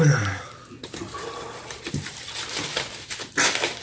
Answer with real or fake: real